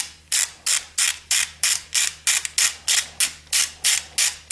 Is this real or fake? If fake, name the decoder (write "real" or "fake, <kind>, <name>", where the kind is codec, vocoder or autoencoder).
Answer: real